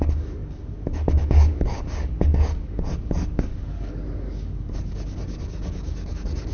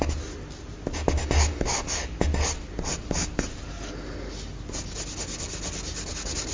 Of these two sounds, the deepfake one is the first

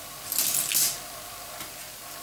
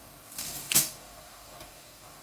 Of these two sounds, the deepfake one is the second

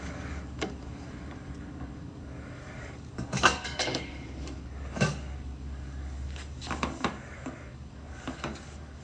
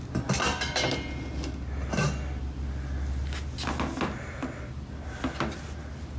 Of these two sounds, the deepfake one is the first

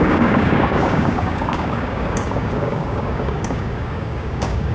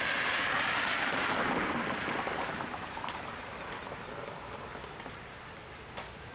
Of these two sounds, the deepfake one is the first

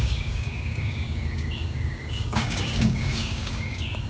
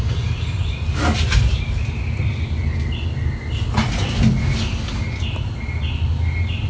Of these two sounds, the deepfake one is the first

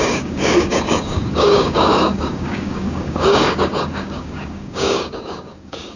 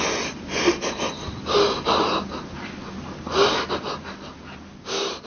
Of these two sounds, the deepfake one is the first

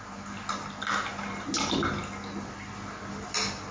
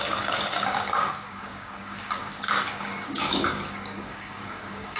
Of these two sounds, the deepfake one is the second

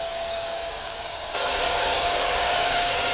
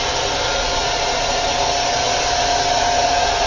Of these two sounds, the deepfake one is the first